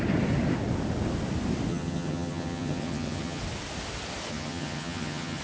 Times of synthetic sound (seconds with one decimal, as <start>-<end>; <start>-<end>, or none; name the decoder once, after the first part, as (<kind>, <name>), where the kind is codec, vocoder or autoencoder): 1.7-3.4 (vocoder, HiFi-GAN); 4.3-5.4